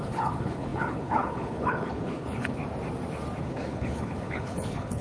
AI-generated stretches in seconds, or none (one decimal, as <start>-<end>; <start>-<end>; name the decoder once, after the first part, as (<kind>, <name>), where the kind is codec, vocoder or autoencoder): 0.0-2.6 (codec, HILCodec); 3.4-5.0